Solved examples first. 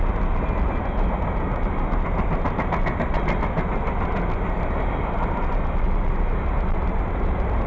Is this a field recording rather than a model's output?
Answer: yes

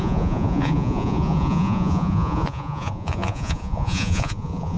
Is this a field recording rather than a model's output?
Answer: no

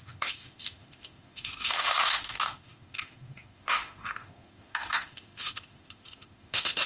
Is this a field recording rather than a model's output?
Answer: no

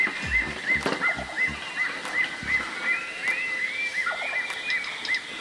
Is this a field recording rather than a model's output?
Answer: yes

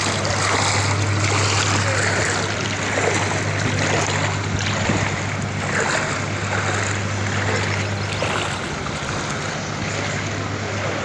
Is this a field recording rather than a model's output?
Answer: yes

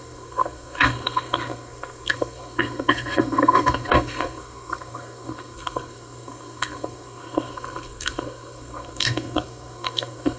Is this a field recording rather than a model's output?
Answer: no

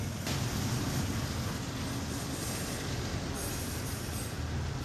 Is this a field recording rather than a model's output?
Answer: yes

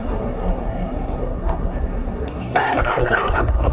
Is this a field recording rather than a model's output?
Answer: no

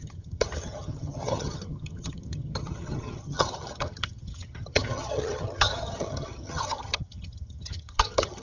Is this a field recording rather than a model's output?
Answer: no